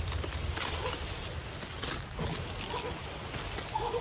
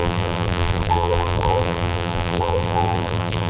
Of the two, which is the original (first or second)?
first